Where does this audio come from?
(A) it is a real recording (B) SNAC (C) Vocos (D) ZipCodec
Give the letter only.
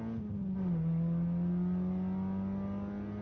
A